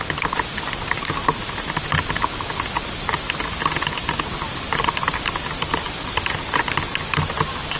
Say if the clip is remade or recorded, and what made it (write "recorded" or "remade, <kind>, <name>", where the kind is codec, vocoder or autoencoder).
recorded